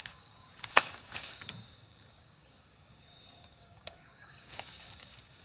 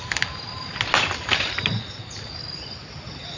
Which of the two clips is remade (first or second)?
first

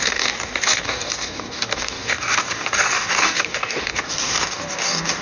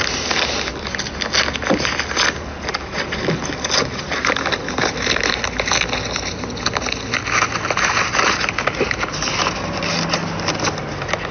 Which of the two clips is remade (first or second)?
first